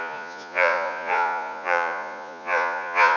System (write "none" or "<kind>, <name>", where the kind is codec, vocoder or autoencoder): vocoder, Vocos